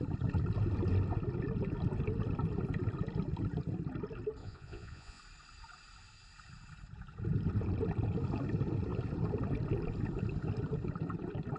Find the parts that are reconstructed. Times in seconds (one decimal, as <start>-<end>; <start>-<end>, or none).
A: 4.4-5.2